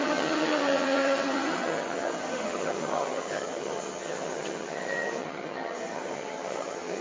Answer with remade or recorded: remade